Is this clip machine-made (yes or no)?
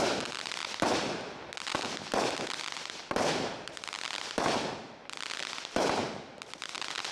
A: no